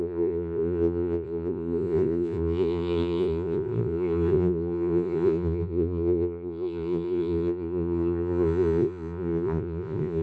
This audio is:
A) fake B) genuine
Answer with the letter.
A